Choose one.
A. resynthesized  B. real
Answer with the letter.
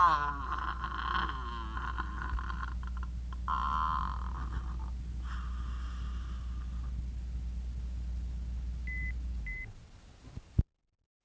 B